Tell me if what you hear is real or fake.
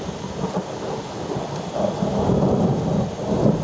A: real